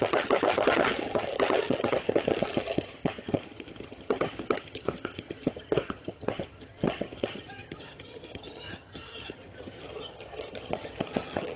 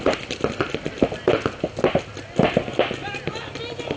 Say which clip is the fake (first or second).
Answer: first